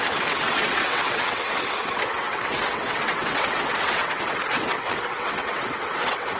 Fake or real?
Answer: fake